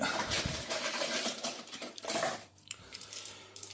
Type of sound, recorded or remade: remade